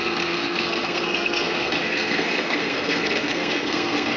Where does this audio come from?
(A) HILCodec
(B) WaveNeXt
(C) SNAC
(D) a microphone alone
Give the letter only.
C